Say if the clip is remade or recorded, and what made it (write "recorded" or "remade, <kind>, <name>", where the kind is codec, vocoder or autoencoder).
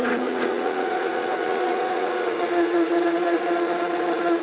remade, vocoder, Vocos